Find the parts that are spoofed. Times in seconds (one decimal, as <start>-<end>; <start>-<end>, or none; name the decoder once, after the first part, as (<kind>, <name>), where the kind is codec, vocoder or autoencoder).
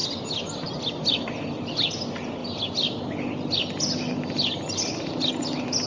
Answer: none